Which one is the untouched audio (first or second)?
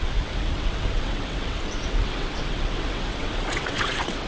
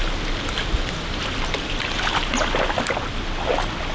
second